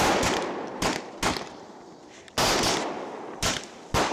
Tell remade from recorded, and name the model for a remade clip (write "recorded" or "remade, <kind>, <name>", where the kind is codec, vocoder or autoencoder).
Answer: recorded